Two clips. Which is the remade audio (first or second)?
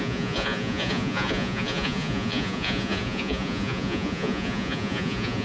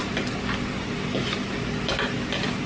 first